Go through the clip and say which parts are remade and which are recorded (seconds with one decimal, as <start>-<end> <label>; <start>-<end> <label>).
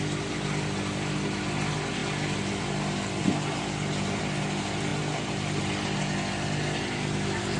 0.0-7.6 recorded